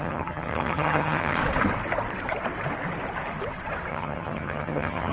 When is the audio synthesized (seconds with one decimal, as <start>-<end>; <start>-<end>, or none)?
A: 0.0-1.4; 3.9-5.1